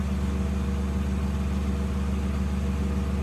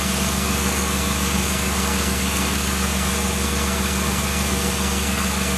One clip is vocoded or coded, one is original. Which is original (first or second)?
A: first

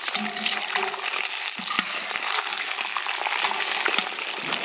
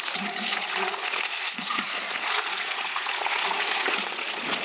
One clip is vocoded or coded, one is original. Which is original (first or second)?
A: first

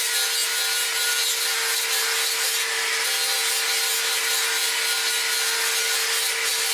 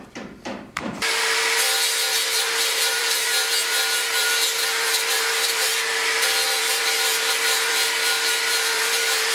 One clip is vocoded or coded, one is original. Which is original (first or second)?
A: first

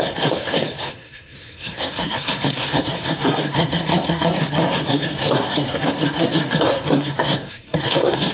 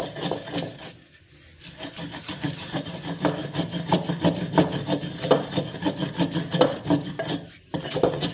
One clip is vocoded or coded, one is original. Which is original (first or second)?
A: second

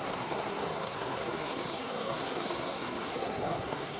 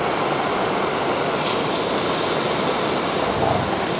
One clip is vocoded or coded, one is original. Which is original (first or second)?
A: second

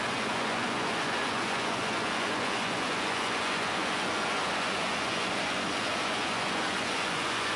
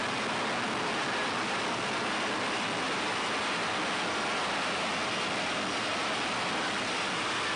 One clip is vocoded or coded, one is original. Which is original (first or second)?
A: second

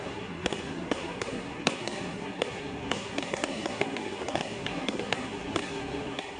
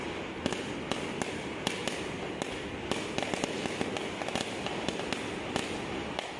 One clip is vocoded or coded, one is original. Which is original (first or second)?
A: second